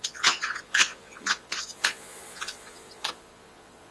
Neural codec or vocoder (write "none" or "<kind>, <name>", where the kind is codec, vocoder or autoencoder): vocoder, Vocos